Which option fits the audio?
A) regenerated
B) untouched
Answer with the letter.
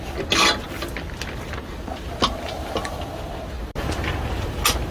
B